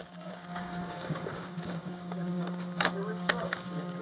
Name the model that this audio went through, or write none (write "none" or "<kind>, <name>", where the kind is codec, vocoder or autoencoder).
codec, DAC